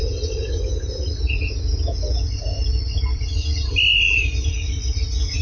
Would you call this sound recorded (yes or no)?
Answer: yes